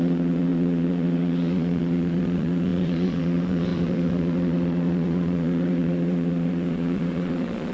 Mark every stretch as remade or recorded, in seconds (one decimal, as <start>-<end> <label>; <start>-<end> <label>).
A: 0.0-7.7 remade